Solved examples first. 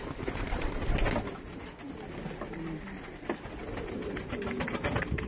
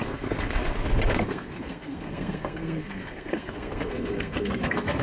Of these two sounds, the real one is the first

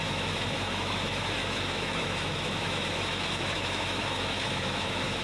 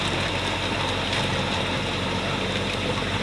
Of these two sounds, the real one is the second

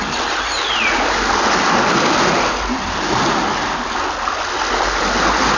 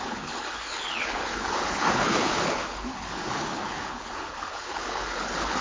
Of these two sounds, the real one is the first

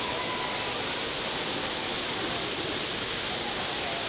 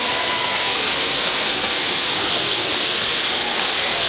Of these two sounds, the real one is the first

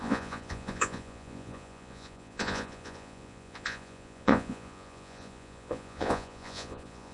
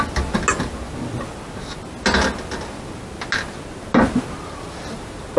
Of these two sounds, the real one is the second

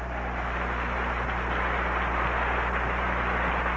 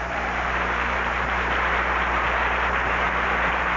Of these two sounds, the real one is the first